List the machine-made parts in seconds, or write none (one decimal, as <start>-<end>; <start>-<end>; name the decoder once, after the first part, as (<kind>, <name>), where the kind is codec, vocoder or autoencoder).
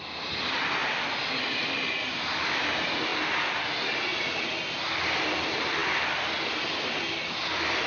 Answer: none